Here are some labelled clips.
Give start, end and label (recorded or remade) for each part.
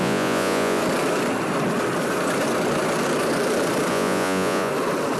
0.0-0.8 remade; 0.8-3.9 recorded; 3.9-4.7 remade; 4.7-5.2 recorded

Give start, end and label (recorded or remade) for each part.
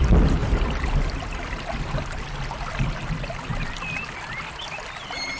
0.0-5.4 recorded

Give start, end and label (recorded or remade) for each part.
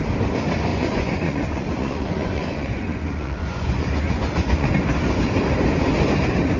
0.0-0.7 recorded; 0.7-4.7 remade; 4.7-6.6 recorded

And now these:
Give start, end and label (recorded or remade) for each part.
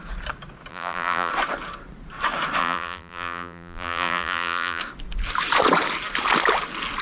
0.0-0.7 recorded; 0.7-1.3 remade; 1.3-2.6 recorded; 2.6-4.8 remade; 4.8-7.0 recorded